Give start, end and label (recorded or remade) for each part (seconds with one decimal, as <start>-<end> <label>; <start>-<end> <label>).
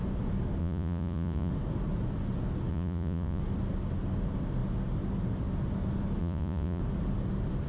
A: 0.0-0.6 recorded; 0.6-1.5 remade; 1.5-2.7 recorded; 2.7-3.4 remade; 3.4-6.2 recorded; 6.2-6.8 remade; 6.8-7.7 recorded